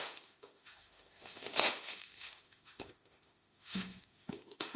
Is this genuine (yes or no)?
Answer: no